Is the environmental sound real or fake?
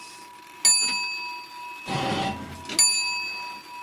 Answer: real